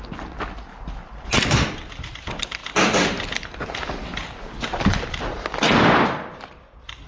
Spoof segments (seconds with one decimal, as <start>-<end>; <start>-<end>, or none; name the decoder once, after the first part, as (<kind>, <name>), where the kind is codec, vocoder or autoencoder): none